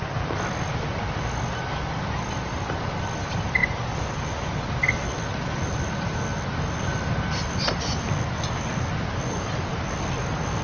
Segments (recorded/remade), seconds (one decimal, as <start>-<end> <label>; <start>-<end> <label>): 0.0-10.6 recorded